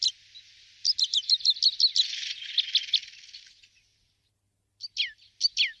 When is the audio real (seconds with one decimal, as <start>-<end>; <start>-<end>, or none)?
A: 0.0-5.8